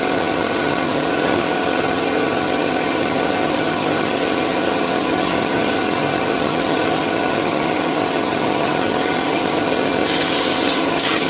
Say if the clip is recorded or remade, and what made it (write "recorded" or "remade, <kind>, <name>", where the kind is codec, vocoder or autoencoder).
remade, vocoder, HiFi-GAN